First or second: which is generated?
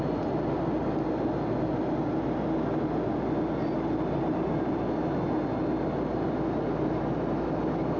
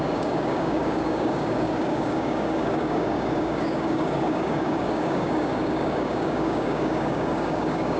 second